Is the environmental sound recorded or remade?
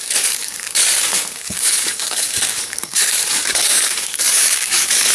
remade